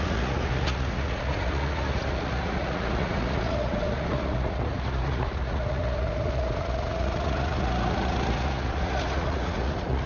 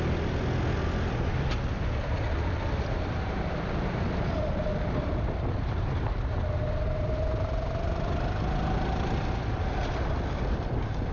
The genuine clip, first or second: second